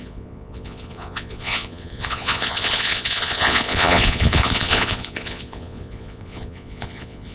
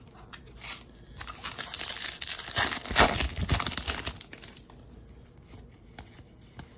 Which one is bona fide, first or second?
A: second